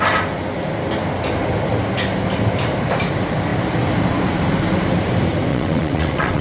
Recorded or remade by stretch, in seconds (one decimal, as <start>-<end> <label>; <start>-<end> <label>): 0.0-5.5 recorded; 5.5-6.4 remade